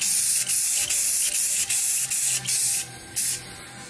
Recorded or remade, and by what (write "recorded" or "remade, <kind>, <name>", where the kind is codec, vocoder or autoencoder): recorded